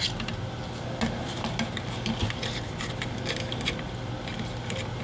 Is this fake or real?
real